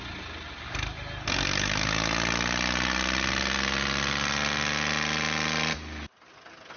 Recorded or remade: recorded